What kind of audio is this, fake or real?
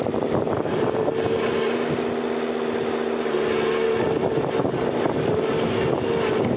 real